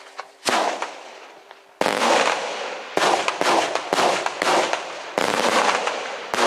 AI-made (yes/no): yes